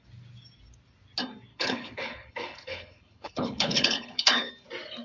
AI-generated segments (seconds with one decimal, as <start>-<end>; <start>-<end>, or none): 1.5-4.5